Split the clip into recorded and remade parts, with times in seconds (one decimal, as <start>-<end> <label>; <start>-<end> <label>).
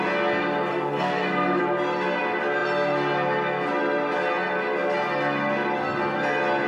0.0-0.7 recorded; 0.7-1.6 remade; 1.6-6.7 recorded